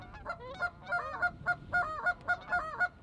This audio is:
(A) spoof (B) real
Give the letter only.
B